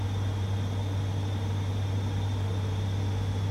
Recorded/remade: recorded